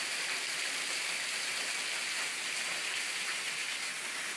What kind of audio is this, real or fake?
real